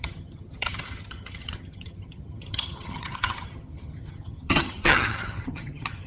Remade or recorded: remade